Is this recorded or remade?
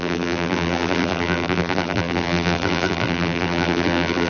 remade